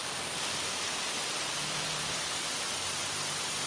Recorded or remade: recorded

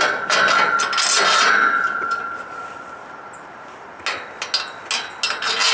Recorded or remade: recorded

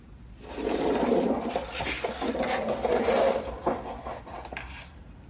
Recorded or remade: recorded